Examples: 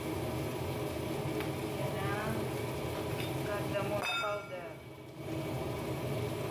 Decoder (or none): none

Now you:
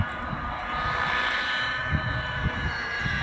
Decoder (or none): none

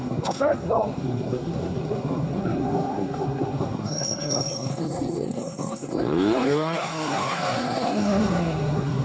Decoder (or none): codec, SNAC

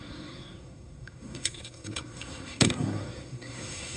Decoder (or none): codec, SNAC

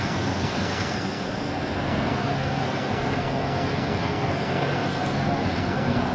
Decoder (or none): codec, SNAC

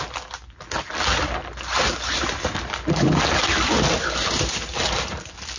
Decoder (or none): none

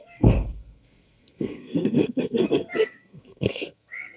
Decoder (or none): codec, SNAC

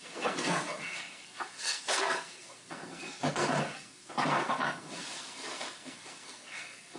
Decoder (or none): codec, SNAC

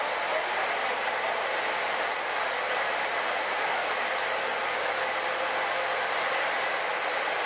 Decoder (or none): none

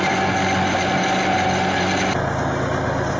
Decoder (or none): none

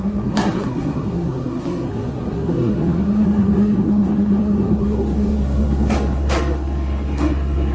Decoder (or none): codec, SNAC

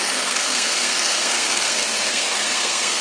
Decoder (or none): codec, SNAC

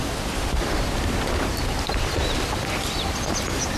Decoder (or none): none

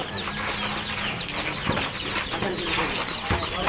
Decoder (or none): none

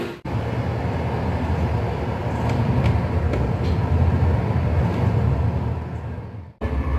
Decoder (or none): none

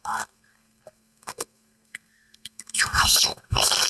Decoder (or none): codec, SNAC